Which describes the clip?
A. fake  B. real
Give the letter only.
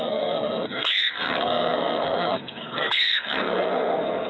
A